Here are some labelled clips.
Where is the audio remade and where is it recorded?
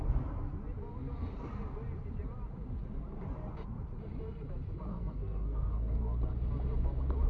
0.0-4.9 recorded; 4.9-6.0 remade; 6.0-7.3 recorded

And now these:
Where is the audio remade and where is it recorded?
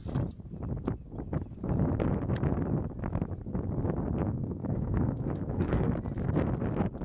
0.0-4.2 recorded; 4.2-5.9 remade; 5.9-7.0 recorded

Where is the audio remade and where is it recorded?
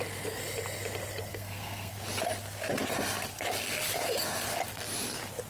0.0-1.3 recorded; 1.3-1.9 remade; 1.9-5.5 recorded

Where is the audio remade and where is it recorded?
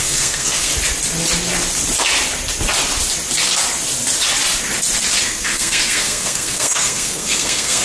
0.0-0.7 remade; 0.7-5.2 recorded; 5.2-7.8 remade